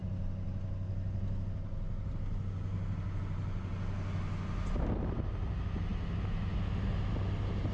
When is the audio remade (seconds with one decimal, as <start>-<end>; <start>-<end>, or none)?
none